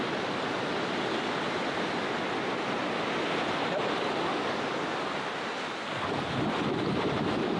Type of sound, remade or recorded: recorded